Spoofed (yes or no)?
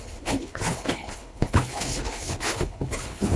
yes